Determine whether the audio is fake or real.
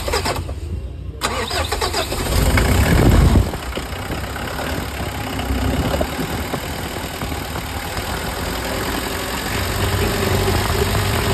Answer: real